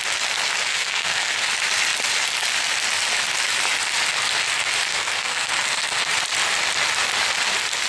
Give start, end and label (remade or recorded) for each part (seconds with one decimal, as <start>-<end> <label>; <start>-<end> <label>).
0.0-0.7 recorded; 0.7-1.5 remade; 1.5-4.9 recorded; 4.9-6.1 remade; 6.1-7.9 recorded